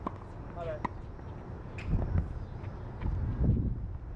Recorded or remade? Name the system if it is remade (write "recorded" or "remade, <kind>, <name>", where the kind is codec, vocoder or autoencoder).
recorded